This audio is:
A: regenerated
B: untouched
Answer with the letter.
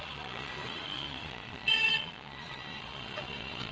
A